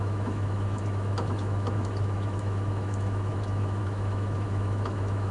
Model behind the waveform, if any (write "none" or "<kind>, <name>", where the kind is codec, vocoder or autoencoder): autoencoder, DAC-VAE